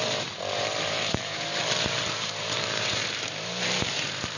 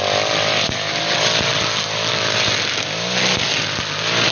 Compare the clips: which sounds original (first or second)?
second